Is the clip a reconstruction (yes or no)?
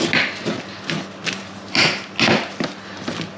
no